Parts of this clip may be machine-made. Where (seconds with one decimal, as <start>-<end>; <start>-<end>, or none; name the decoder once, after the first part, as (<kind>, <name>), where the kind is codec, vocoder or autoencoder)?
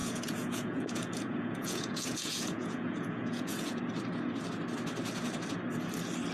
0.0-3.8 (vocoder, Vocos)